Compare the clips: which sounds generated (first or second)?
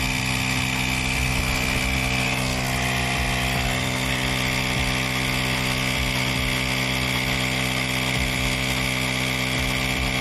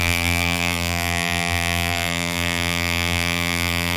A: second